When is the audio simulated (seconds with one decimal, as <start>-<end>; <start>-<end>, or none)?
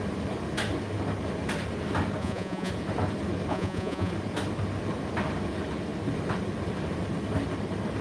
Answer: 2.2-2.7; 3.5-4.1